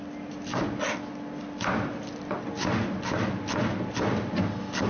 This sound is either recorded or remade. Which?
recorded